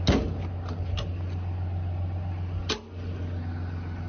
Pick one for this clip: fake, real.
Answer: real